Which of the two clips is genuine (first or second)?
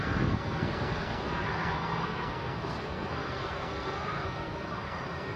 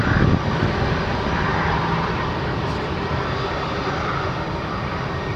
second